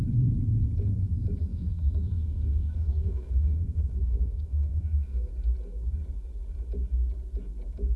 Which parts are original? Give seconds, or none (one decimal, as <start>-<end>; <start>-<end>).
0.0-1.5; 5.3-8.0

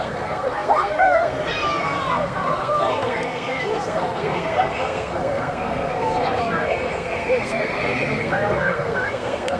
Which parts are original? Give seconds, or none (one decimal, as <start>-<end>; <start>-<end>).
none

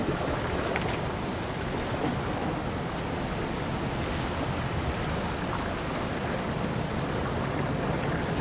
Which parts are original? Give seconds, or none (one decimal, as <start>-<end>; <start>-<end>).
0.0-8.4